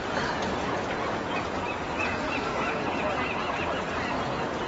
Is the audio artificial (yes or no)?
yes